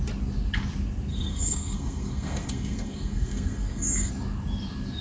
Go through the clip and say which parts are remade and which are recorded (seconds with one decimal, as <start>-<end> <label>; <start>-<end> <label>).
0.0-1.1 recorded; 1.1-4.1 remade; 4.1-5.0 recorded